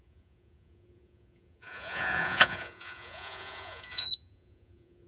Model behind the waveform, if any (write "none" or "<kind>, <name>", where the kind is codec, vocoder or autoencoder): vocoder, Vocos